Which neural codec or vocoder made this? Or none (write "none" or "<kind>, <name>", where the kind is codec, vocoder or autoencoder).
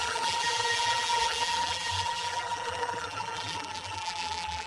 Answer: vocoder, BigVGAN v2